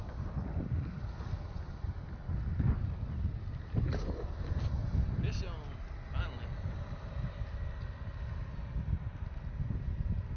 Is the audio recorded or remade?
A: recorded